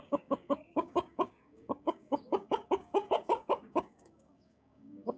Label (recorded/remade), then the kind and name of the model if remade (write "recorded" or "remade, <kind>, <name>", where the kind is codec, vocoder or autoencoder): remade, codec, DAC